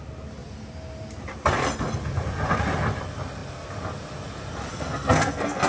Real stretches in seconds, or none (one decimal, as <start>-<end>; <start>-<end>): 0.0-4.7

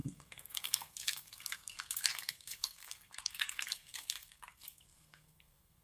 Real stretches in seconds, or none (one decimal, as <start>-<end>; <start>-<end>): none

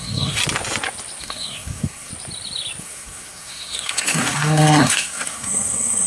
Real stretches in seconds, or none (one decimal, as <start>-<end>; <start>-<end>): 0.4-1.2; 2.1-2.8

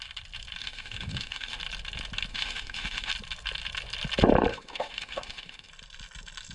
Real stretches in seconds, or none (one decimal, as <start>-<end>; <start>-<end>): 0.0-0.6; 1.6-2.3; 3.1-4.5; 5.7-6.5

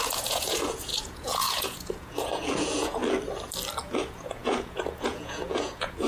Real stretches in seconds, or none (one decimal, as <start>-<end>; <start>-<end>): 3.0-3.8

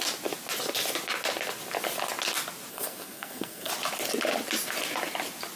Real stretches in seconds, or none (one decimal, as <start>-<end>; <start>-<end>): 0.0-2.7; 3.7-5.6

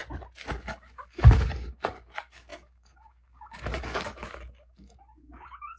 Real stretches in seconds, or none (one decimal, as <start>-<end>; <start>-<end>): 0.0-0.5